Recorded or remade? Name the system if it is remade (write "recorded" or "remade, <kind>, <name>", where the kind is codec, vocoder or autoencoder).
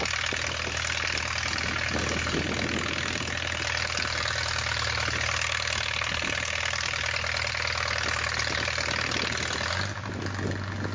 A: recorded